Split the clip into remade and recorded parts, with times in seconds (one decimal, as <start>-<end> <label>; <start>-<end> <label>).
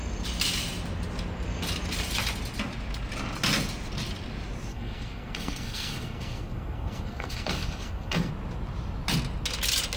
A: 0.0-4.7 recorded; 4.7-8.3 remade; 8.3-10.0 recorded